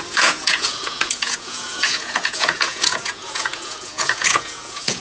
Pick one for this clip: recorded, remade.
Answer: remade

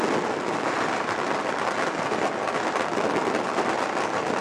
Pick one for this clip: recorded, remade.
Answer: recorded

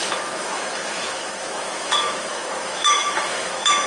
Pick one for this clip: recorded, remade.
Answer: remade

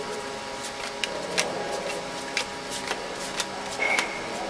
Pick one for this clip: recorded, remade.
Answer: recorded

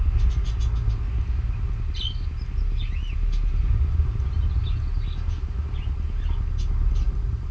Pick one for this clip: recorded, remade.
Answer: recorded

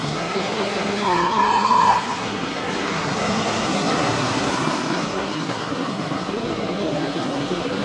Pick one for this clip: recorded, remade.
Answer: remade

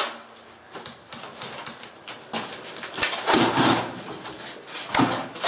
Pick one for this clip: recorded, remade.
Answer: recorded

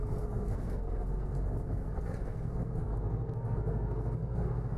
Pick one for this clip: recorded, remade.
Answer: remade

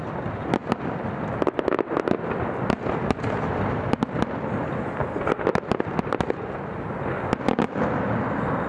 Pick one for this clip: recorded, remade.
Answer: recorded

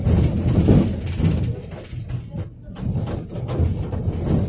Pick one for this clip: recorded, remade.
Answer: recorded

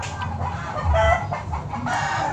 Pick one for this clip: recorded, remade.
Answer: recorded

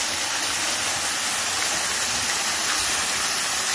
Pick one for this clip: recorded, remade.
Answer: recorded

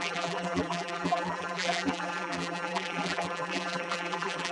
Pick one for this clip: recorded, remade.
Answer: remade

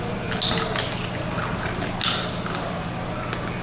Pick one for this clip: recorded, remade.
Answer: recorded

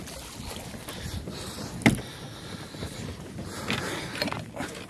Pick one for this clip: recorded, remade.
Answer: recorded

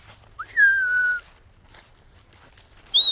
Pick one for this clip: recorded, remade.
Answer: recorded